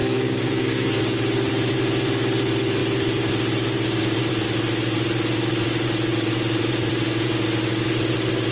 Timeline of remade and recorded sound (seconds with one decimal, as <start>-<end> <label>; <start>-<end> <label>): 0.0-1.0 remade; 1.0-8.5 recorded